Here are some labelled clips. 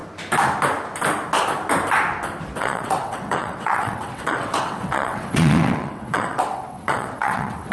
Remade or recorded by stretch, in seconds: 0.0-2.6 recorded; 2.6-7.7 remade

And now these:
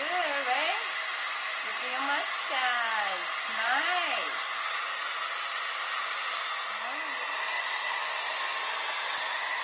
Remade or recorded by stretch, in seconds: 0.0-9.6 recorded

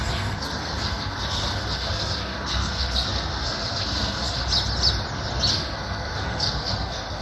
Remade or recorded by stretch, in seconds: 0.0-4.4 remade; 4.4-5.5 recorded; 5.5-7.2 remade

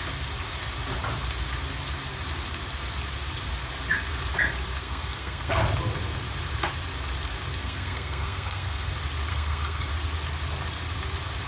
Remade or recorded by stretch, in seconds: 0.0-4.8 recorded; 4.8-5.6 remade; 5.6-7.6 recorded; 7.6-8.9 remade; 8.9-9.3 recorded; 9.3-9.9 remade; 9.9-11.5 recorded